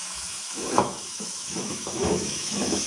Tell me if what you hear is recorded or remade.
remade